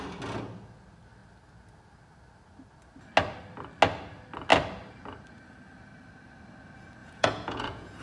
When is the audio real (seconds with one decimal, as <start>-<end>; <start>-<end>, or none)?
0.0-7.0